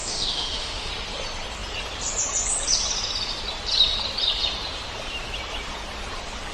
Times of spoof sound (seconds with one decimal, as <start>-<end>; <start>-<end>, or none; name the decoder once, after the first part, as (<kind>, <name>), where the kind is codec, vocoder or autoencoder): 0.0-0.9 (autoencoder, DAC-VAE)